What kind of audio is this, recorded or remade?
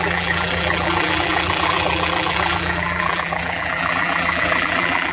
remade